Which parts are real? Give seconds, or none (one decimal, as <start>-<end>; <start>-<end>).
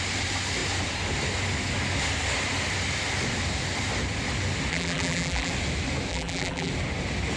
0.0-4.7; 5.5-6.1; 6.7-7.4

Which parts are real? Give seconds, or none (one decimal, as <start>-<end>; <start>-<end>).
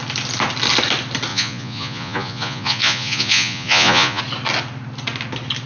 0.0-1.3; 4.2-5.7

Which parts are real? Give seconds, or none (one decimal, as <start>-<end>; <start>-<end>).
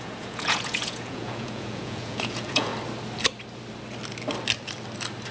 2.7-5.3